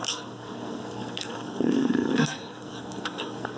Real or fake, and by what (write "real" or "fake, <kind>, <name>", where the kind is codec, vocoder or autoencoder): fake, codec, SNAC